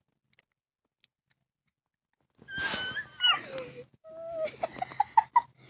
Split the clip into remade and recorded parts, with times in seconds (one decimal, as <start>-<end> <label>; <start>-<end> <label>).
0.0-5.7 recorded